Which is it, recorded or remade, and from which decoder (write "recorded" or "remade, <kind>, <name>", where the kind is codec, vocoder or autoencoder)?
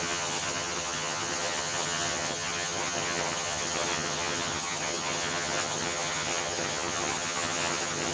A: remade, vocoder, HiFi-GAN